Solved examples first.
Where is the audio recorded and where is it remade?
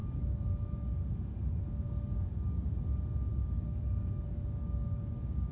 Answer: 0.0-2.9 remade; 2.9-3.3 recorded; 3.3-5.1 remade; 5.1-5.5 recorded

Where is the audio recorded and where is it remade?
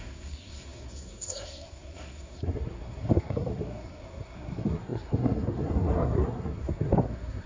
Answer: 0.0-7.5 remade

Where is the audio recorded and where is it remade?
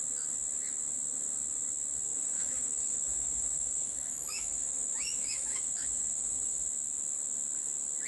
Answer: 0.0-2.1 recorded; 2.1-6.7 remade; 6.7-8.1 recorded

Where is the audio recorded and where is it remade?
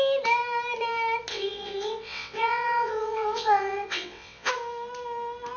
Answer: 0.0-1.3 recorded; 1.3-4.5 remade; 4.5-5.6 recorded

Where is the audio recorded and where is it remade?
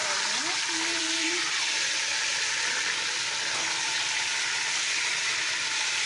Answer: 0.0-6.1 recorded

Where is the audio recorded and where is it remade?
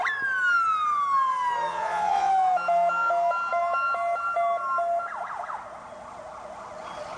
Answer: 0.0-1.7 recorded; 1.7-2.3 remade; 2.3-7.2 recorded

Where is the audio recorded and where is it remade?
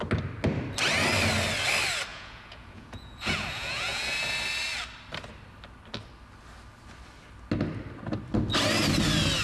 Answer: 0.0-2.1 recorded; 2.1-4.2 remade; 4.2-9.4 recorded